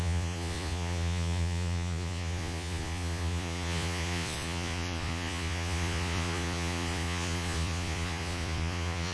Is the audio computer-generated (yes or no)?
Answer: yes